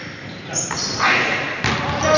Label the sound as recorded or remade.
recorded